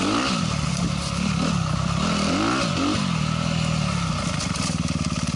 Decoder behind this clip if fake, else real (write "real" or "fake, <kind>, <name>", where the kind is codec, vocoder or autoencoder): real